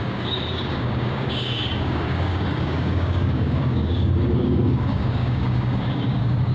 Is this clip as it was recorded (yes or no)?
no